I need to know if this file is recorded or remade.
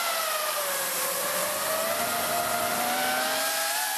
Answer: recorded